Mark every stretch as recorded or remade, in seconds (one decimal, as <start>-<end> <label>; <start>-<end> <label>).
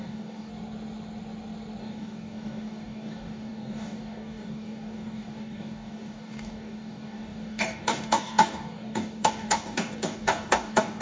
0.0-0.5 remade; 0.5-1.8 recorded; 1.8-11.0 remade